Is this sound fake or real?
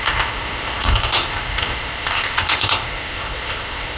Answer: fake